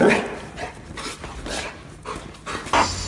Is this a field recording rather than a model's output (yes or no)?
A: yes